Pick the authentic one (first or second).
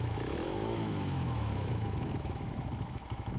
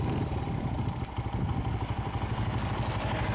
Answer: second